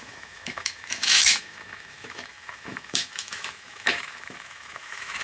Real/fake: fake